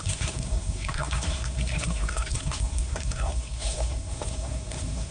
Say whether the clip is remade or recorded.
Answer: remade